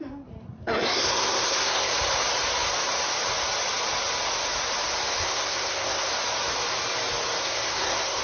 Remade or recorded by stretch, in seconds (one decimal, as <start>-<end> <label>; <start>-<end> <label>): 0.0-0.6 recorded; 0.6-1.9 remade; 1.9-5.2 recorded; 5.2-6.1 remade; 6.1-7.4 recorded; 7.4-8.2 remade

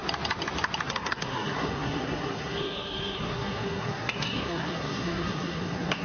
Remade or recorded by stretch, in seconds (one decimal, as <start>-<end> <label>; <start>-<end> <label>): 0.0-0.9 recorded; 0.9-6.0 remade

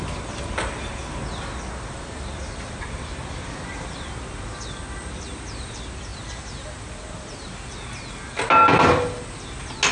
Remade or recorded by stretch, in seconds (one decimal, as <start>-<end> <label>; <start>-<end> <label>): 0.0-9.9 recorded